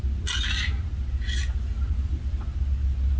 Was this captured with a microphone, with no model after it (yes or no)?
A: yes